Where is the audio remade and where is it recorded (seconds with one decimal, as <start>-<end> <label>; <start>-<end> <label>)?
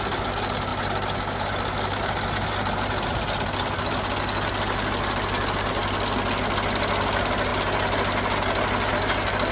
0.0-9.5 recorded